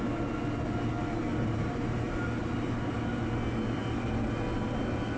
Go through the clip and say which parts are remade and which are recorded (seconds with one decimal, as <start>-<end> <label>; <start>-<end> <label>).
0.0-1.3 recorded; 1.3-3.1 remade; 3.1-5.2 recorded